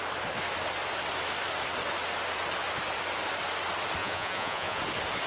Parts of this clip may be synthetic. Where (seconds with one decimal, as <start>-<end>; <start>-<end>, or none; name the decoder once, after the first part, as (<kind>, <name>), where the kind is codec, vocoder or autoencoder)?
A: 4.0-4.8 (vocoder, Vocos)